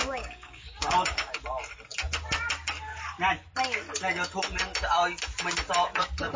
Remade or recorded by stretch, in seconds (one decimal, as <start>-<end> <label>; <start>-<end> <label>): 0.0-1.4 remade; 1.4-6.4 recorded